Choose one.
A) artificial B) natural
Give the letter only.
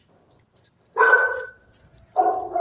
B